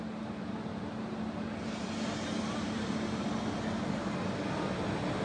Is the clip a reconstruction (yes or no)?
no